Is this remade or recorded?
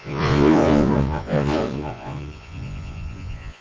remade